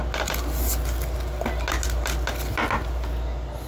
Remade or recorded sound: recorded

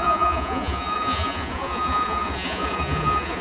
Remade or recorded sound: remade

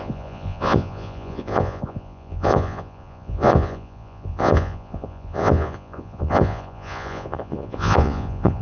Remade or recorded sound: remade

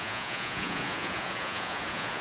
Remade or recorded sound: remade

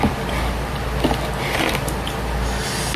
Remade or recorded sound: recorded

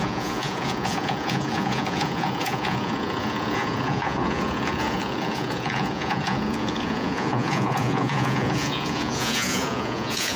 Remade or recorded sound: remade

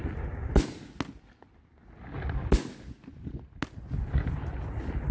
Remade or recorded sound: recorded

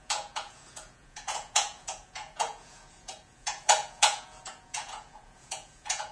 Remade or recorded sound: remade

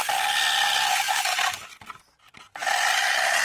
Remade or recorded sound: recorded